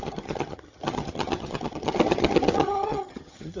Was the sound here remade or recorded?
remade